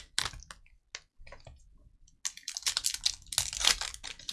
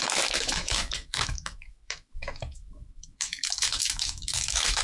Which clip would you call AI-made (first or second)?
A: second